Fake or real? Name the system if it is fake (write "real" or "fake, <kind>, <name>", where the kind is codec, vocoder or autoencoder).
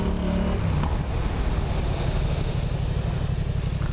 real